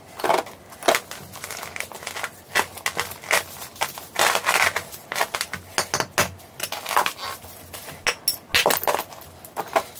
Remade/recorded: recorded